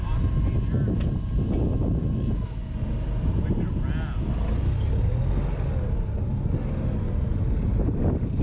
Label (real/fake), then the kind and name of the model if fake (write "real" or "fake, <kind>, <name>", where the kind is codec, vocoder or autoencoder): real